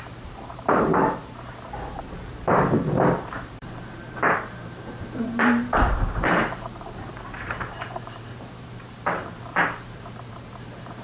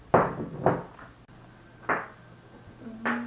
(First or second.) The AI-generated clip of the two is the first